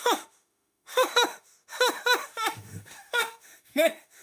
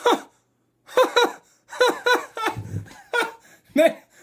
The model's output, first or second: first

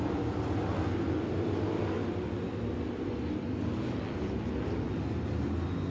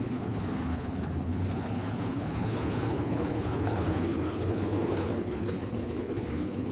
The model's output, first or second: second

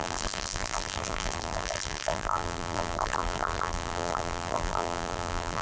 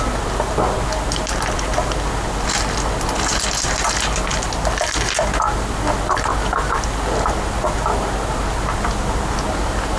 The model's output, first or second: first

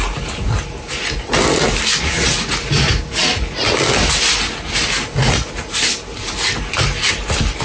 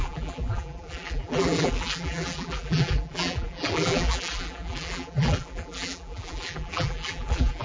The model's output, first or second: second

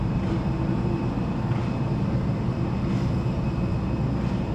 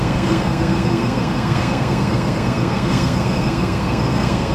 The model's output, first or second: second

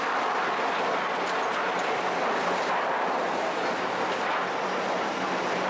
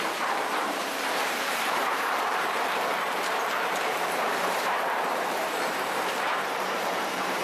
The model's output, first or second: second